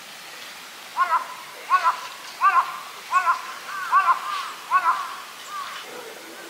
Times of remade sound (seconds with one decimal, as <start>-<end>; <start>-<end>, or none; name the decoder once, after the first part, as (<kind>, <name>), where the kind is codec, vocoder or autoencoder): none